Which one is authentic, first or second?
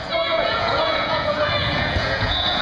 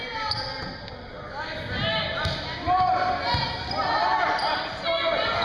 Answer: second